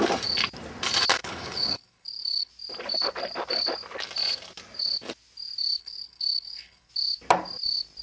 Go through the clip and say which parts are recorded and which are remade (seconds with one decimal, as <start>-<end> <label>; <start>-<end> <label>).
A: 0.0-1.2 recorded; 1.2-2.5 remade; 2.5-5.8 recorded; 5.8-6.9 remade; 6.9-8.0 recorded